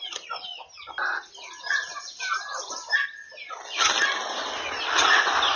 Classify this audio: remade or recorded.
recorded